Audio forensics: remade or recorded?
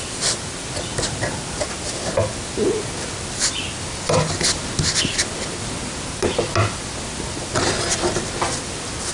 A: recorded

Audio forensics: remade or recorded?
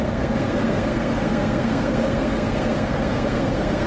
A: remade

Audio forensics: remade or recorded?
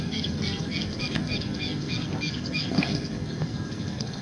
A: remade